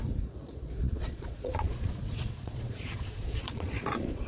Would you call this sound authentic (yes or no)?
no